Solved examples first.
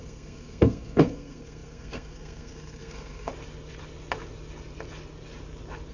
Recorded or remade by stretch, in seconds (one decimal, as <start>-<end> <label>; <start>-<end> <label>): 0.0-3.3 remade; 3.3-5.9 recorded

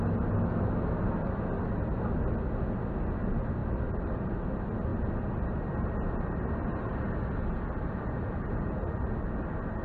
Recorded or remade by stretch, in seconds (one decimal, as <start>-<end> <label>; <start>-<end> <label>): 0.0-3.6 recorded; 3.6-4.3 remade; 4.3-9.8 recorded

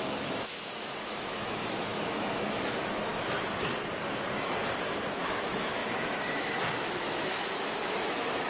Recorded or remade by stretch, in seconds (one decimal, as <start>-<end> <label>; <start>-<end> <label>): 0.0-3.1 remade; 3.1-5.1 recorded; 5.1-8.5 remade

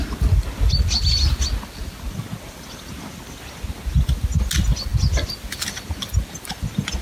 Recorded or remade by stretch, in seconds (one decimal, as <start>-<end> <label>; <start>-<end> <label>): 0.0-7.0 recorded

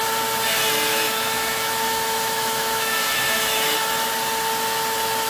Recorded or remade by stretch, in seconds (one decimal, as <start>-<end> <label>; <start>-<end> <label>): 0.0-0.9 recorded; 0.9-4.1 remade; 4.1-5.3 recorded

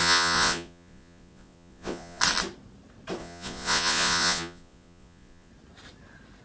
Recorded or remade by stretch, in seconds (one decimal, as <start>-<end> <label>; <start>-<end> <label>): 0.0-2.2 remade; 2.2-3.2 recorded; 3.2-5.5 remade; 5.5-6.4 recorded

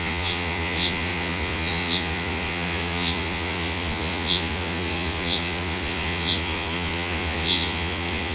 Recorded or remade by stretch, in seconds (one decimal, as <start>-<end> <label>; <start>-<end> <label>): 0.0-8.3 remade

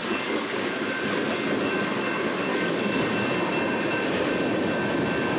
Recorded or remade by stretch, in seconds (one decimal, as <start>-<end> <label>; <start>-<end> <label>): 0.0-0.7 remade; 0.7-2.5 recorded; 2.5-3.1 remade; 3.1-5.4 recorded